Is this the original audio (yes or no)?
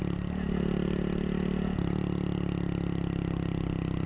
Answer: yes